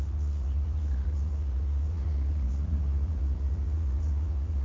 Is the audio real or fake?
fake